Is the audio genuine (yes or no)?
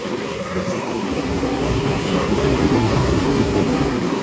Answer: no